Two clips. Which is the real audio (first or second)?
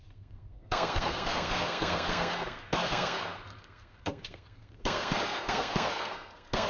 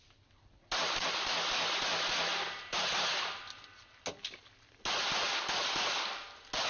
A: second